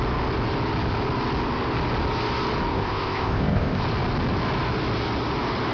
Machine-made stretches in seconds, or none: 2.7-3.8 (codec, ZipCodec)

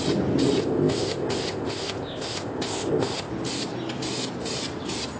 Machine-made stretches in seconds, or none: 0.6-3.3 (codec, ZipCodec)

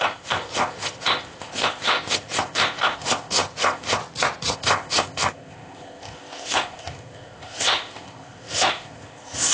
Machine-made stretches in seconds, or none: 0.0-4.0 (codec, ZipCodec); 4.5-9.5